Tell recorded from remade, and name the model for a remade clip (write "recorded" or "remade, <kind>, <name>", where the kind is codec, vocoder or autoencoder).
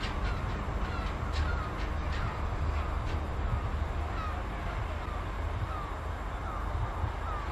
recorded